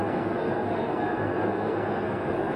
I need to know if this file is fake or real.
fake